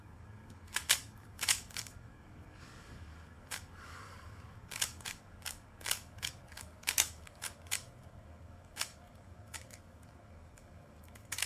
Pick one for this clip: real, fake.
fake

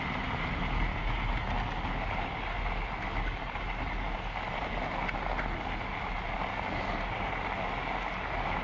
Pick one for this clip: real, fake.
real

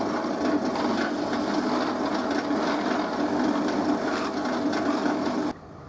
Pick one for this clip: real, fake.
real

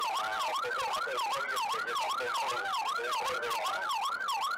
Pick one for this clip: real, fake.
real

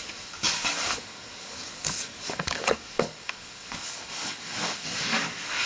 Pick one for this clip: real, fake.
fake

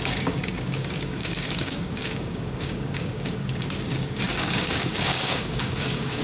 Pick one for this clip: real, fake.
fake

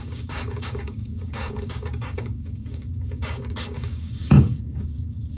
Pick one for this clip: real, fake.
fake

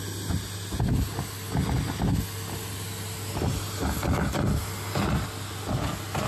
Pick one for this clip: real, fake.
real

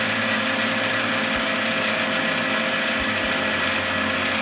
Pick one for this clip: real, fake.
real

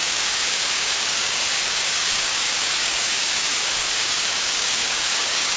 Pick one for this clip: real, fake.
fake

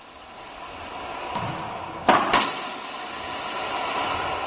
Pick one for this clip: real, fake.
real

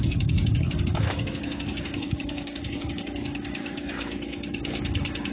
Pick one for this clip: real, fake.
fake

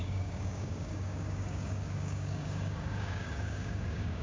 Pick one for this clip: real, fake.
fake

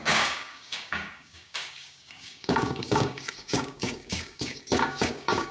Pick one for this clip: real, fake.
fake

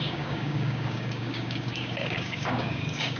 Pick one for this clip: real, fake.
fake